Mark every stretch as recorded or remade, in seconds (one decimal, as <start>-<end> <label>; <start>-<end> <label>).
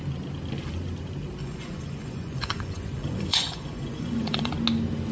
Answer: 0.0-1.4 recorded; 1.4-4.5 remade; 4.5-5.1 recorded